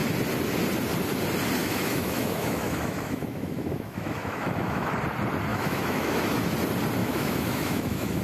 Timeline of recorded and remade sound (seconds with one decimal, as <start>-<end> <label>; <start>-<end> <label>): 0.0-1.6 recorded; 1.6-4.9 remade; 4.9-5.5 recorded; 5.5-6.2 remade; 6.2-7.0 recorded; 7.0-8.2 remade